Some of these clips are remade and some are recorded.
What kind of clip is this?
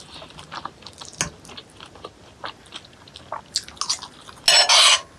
recorded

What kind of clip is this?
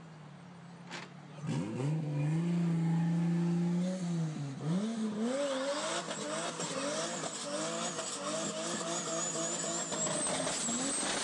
recorded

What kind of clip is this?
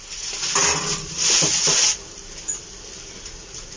recorded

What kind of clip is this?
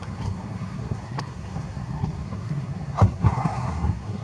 remade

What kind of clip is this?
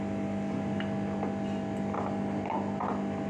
recorded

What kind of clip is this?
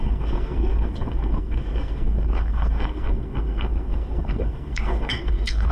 remade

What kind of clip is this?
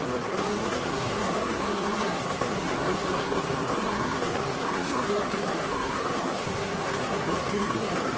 remade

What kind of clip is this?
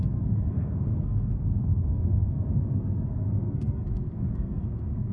remade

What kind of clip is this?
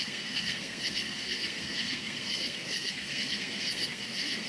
remade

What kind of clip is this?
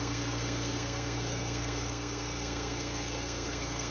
remade